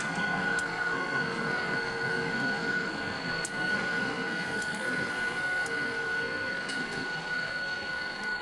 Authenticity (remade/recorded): remade